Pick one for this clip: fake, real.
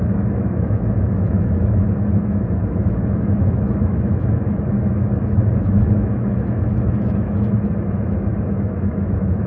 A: fake